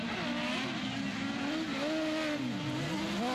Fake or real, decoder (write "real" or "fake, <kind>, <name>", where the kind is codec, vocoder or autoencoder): real